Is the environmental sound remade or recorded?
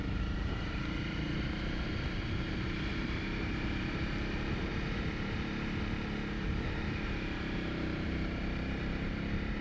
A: remade